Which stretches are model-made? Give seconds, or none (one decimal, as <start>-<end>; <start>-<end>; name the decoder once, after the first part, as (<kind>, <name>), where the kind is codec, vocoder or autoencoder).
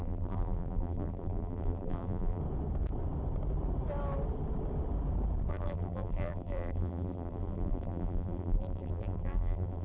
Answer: 0.0-2.4 (vocoder, BigVGAN v2); 5.5-9.8